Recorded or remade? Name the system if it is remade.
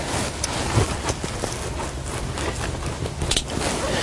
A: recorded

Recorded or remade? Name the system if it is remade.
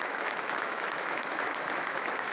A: remade, autoencoder, DAC-VAE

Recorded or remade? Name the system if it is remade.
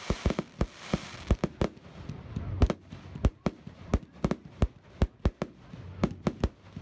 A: recorded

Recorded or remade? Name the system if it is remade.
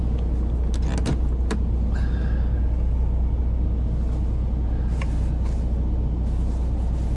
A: recorded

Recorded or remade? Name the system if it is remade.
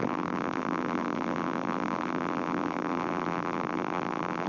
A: remade, vocoder, BigVGAN v2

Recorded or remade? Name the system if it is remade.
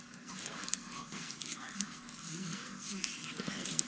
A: remade, codec, SNAC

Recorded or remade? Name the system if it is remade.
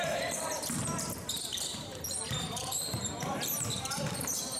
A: remade, vocoder, BigVGAN v2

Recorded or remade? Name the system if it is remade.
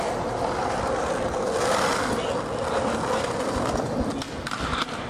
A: recorded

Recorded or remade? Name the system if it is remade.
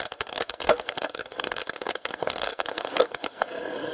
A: remade, codec, SNAC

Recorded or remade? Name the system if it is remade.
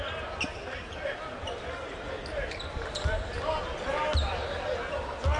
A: recorded